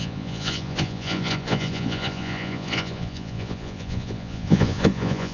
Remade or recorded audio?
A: remade